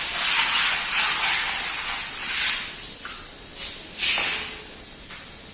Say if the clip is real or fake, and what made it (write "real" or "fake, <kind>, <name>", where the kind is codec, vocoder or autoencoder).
real